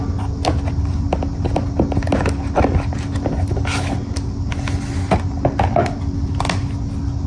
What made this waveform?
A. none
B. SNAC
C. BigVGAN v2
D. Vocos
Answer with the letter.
A